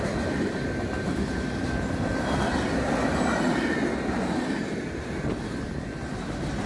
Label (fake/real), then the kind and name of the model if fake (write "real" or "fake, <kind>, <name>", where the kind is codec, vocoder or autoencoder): real